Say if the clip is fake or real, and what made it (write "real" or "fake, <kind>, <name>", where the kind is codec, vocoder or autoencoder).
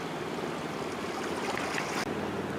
real